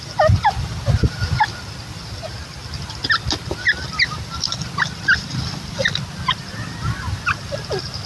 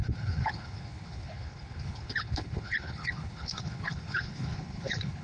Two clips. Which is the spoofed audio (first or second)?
second